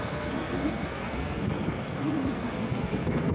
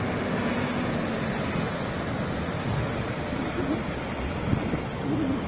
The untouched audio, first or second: second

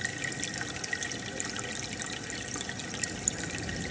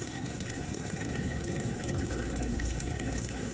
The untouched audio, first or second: first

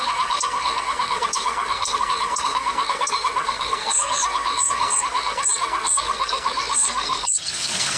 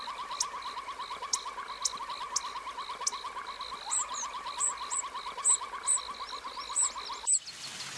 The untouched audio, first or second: second